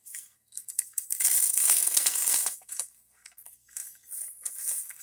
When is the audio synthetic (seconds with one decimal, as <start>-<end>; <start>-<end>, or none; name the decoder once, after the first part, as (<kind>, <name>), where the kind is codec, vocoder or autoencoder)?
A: 0.0-5.0 (codec, SNAC)